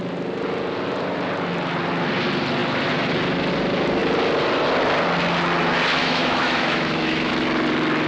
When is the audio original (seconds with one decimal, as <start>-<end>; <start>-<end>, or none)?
0.0-6.0; 7.3-8.1